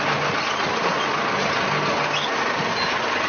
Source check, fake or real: real